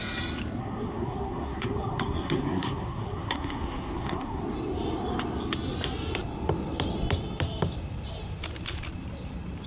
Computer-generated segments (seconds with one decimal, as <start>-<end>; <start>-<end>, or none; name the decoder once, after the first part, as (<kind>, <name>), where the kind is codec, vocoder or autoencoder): 0.6-4.4 (codec, SNAC)